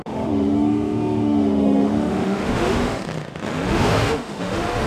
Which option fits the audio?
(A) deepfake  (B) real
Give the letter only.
A